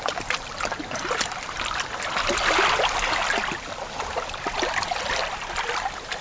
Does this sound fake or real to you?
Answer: real